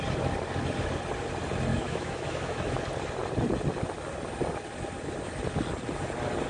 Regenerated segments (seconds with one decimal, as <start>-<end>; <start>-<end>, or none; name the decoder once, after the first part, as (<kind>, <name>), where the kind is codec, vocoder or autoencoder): 1.7-2.8 (autoencoder, DAC-VAE)